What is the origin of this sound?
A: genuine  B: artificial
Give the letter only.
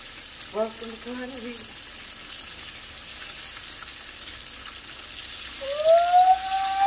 A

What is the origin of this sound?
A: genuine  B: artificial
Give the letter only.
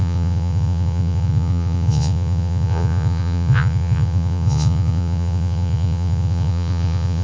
B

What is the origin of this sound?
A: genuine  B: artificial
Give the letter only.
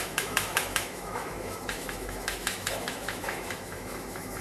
B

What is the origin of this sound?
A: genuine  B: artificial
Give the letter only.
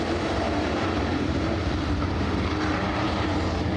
B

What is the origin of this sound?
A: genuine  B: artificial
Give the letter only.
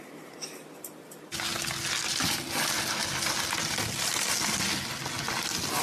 A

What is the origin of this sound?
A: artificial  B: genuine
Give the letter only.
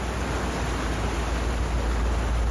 B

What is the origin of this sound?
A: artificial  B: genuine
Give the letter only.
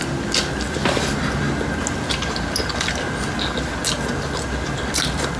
B